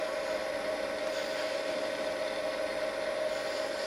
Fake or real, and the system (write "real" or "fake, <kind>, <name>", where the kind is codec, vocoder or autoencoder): real